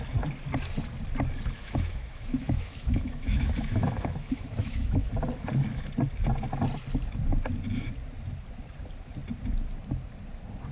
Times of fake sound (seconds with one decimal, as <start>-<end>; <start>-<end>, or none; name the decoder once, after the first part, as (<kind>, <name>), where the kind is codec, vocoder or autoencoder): 1.6-5.1 (autoencoder, DAC-VAE)